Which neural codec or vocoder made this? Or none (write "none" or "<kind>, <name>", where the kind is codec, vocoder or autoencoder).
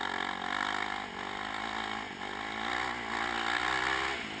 none